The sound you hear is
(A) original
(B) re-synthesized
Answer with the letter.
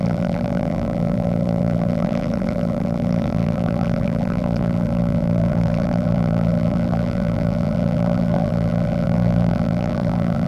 B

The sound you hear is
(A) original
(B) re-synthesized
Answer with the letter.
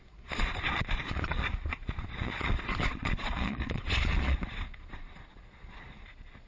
B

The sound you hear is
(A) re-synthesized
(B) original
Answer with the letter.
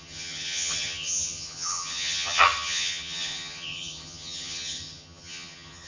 A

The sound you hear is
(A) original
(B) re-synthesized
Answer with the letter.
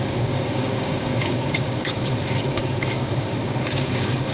B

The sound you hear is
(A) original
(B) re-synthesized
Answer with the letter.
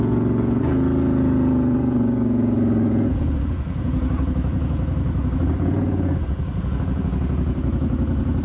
B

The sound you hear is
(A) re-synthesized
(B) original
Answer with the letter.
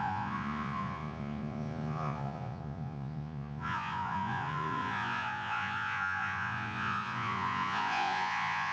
A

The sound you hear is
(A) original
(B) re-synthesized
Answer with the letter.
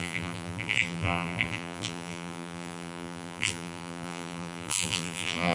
B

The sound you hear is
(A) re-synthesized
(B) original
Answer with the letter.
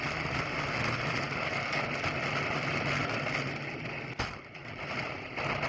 B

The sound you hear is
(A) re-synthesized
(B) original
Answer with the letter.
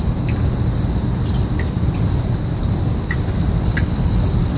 B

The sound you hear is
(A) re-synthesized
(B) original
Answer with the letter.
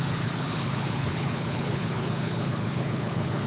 A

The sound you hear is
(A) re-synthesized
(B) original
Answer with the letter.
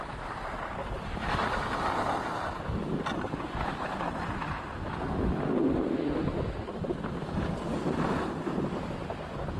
B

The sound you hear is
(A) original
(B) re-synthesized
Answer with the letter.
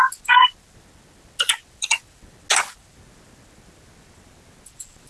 A